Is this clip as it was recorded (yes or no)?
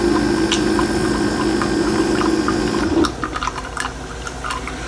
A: yes